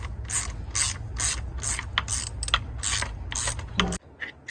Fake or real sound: real